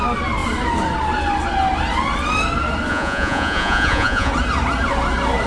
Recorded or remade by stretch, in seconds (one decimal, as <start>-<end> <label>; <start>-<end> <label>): 0.0-2.9 recorded; 2.9-4.3 remade; 4.3-5.5 recorded